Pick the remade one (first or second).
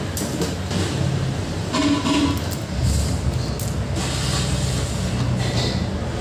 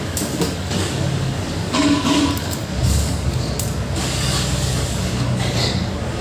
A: second